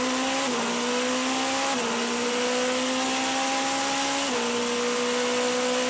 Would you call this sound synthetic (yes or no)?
no